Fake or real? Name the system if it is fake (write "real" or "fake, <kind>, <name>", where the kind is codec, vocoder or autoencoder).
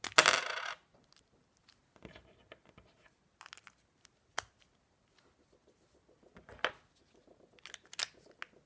real